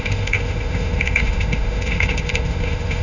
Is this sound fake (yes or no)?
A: yes